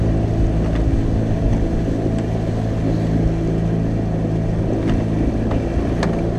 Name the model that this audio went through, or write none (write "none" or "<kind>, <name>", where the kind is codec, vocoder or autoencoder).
none